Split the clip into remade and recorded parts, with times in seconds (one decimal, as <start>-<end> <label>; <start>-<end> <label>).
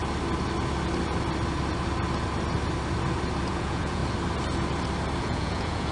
0.0-3.5 recorded; 3.5-4.0 remade; 4.0-5.2 recorded; 5.2-5.9 remade